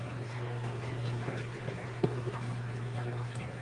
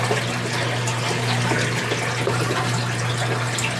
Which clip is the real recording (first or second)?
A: second